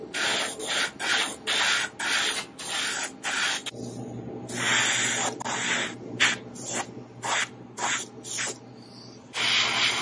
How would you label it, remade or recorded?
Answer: recorded